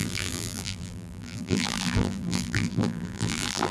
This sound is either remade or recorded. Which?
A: remade